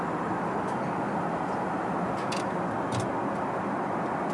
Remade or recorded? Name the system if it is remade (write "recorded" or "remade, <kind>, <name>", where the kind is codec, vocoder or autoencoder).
recorded